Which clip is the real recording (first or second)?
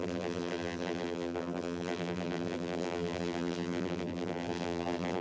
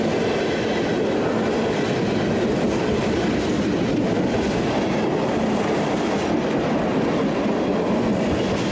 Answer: second